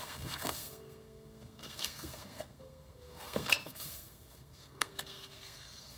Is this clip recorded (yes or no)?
no